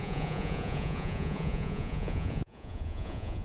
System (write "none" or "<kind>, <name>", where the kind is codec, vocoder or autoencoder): vocoder, Vocos